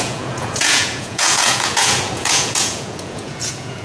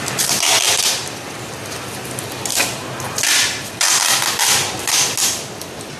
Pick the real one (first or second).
second